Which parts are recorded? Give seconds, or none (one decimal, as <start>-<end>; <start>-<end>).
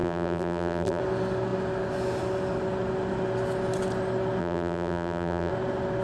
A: 1.0-4.4; 5.5-6.0